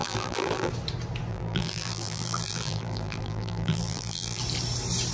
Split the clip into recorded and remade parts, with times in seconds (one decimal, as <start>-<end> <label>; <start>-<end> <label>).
0.0-0.7 remade; 0.7-1.3 recorded; 1.3-4.4 remade; 4.4-5.1 recorded

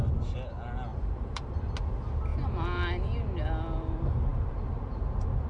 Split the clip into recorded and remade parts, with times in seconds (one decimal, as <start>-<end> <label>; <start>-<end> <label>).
0.0-0.9 recorded; 0.9-1.6 remade; 1.6-4.3 recorded; 4.3-5.0 remade; 5.0-5.5 recorded